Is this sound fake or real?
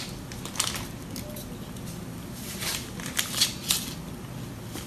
real